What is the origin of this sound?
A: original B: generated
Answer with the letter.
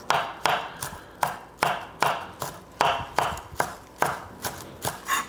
A